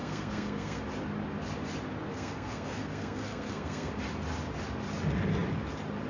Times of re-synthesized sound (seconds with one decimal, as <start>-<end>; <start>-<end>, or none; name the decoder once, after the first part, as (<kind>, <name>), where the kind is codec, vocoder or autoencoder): 0.0-0.8 (codec, SNAC); 2.1-4.0

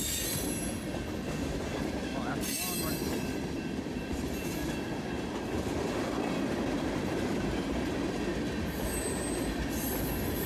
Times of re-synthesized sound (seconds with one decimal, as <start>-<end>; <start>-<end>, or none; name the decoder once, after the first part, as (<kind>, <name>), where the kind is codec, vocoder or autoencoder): 3.9-4.4 (vocoder, BigVGAN v2)

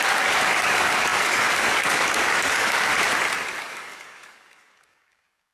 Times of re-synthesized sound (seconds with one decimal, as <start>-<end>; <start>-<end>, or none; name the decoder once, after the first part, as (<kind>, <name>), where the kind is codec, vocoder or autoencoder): 0.0-2.9 (codec, DAC); 3.5-5.5

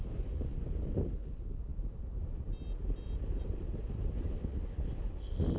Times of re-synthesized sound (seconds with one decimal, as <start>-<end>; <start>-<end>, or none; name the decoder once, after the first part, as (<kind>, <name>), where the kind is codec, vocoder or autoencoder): none

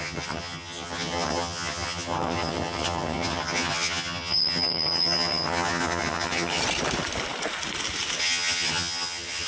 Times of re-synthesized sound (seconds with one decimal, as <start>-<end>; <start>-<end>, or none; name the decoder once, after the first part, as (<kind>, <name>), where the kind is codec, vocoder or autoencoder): 0.0-6.6 (vocoder, HiFi-GAN); 8.2-9.5